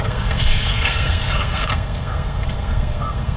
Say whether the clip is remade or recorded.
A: remade